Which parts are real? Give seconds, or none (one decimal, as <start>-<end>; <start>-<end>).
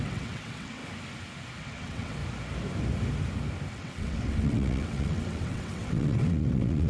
0.8-1.6; 2.2-3.7